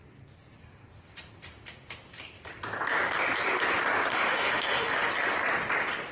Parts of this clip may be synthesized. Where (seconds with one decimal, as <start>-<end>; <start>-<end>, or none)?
4.1-5.1